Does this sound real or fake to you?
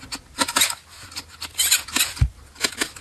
real